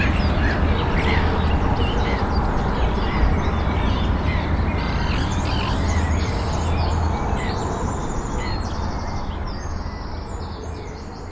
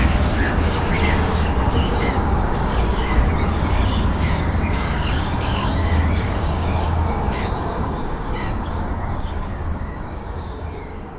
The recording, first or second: first